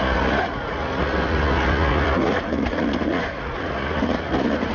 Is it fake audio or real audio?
fake